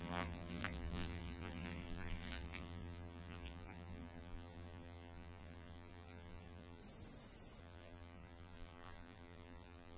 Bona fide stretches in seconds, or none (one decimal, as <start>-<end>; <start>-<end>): 6.8-7.6

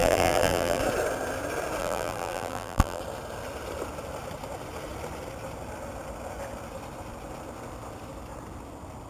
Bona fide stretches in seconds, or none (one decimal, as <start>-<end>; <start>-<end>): 0.8-1.8; 3.0-9.1

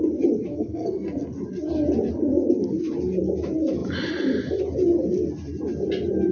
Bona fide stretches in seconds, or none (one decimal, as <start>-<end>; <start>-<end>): 0.0-0.5; 1.3-6.3

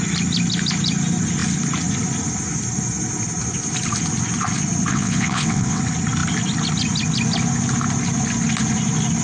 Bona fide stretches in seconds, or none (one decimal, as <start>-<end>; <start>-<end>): 0.0-4.9; 5.8-9.2

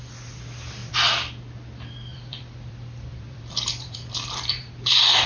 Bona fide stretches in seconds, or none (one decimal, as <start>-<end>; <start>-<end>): 0.0-2.1